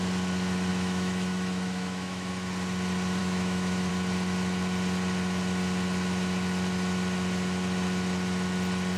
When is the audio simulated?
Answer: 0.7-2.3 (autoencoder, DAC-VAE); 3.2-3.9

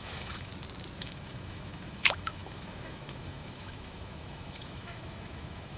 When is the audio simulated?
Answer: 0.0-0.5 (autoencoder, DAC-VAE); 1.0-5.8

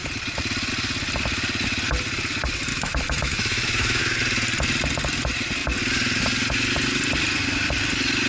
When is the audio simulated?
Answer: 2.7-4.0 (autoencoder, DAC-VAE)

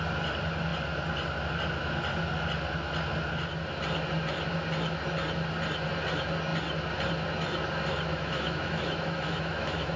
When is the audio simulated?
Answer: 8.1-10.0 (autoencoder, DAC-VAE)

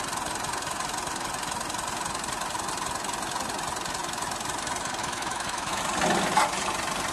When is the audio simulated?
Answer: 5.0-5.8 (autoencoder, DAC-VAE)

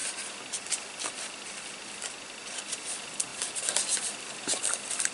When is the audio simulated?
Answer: none